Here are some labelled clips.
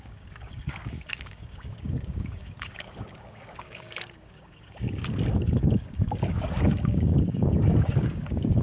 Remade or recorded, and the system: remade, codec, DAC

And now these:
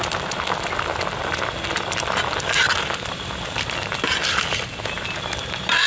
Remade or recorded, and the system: recorded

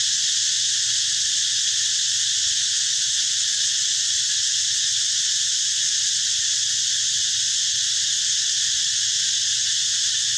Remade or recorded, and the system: recorded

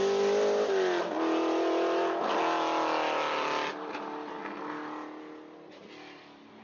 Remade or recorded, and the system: recorded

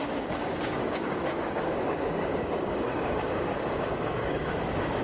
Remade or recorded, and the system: remade, codec, DAC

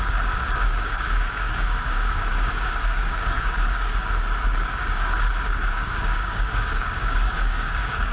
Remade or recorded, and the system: remade, codec, DAC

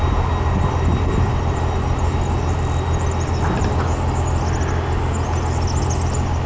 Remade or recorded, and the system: recorded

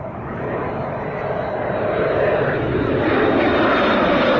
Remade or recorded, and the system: recorded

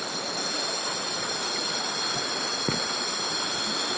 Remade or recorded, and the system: recorded